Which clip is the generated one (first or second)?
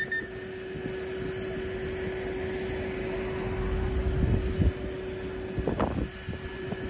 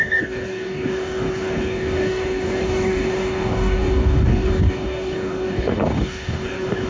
second